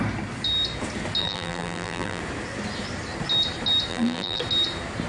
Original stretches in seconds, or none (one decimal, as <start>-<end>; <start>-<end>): 0.0-1.2; 2.2-3.9; 4.4-5.1